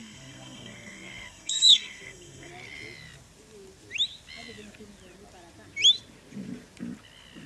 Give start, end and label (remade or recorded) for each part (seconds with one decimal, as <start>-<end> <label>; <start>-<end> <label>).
0.0-2.5 remade; 2.5-7.5 recorded